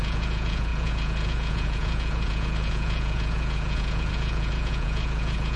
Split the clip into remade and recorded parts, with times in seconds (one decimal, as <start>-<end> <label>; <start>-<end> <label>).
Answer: 0.0-5.6 remade